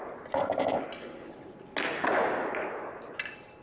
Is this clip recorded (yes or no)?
yes